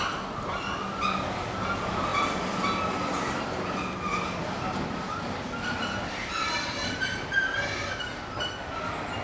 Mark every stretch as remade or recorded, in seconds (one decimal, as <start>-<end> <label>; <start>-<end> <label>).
0.0-9.2 recorded